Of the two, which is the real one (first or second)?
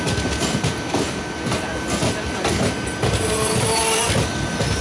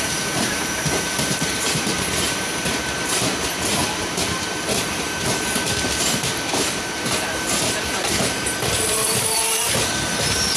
first